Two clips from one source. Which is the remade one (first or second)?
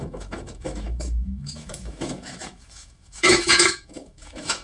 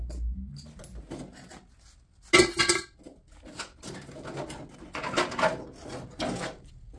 first